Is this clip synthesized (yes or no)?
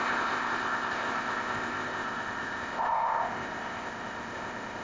yes